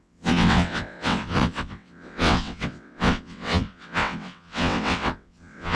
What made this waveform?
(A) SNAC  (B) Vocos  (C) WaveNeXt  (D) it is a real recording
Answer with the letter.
C